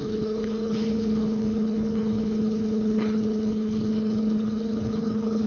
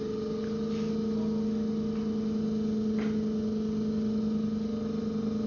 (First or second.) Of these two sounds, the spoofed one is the first